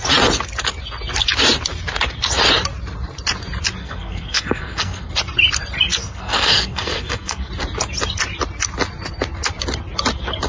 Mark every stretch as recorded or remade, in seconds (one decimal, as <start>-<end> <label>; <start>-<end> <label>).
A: 0.0-3.8 recorded; 3.8-5.1 remade; 5.1-6.0 recorded; 6.0-7.5 remade; 7.5-10.5 recorded

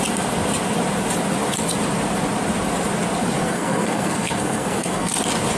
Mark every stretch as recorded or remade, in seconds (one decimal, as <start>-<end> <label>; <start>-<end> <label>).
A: 0.0-3.4 recorded; 3.4-5.1 remade; 5.1-5.6 recorded

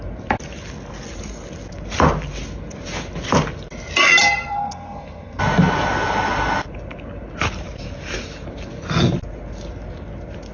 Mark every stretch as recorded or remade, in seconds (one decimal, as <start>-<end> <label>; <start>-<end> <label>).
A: 0.0-4.2 recorded; 4.2-5.4 remade; 5.4-10.5 recorded

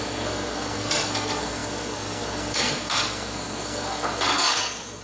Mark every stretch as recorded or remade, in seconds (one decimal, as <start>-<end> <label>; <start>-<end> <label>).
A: 0.0-5.0 remade

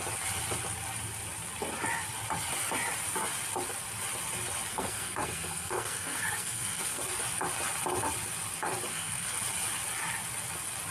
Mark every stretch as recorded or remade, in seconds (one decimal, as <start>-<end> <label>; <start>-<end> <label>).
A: 0.0-4.7 recorded; 4.7-7.0 remade; 7.0-8.9 recorded; 8.9-9.4 remade; 9.4-10.9 recorded

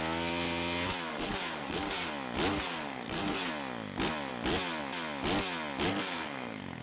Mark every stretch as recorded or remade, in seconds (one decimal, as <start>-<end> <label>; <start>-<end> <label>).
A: 0.0-1.1 recorded; 1.1-2.1 remade; 2.1-2.5 recorded; 2.5-3.5 remade; 3.5-5.9 recorded; 5.9-6.8 remade

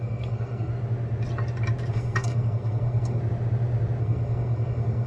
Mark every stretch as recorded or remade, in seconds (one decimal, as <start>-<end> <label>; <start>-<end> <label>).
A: 0.0-0.7 remade; 0.7-1.9 recorded; 1.9-3.2 remade; 3.2-4.0 recorded; 4.0-5.1 remade